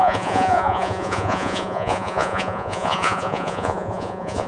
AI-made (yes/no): yes